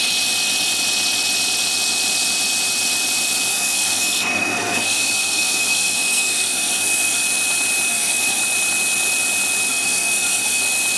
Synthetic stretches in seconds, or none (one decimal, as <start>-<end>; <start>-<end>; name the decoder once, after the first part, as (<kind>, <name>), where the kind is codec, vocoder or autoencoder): 3.5-7.2 (codec, SNAC); 7.9-8.4; 9.7-10.6